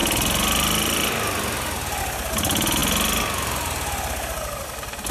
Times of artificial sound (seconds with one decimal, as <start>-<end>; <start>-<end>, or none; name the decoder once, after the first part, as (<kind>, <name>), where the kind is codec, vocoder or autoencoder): none